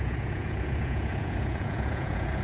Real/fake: fake